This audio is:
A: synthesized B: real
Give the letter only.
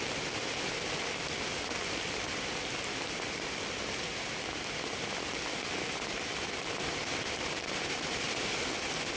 B